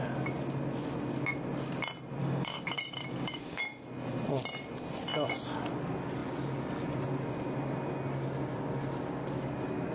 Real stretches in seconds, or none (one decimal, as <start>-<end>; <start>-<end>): 0.0-2.2; 3.6-9.9